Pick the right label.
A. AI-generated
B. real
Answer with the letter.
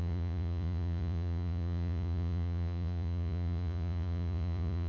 A